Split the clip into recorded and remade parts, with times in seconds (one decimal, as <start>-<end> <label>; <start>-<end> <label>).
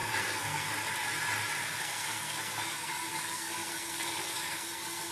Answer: 0.0-0.7 remade; 0.7-1.6 recorded; 1.6-5.1 remade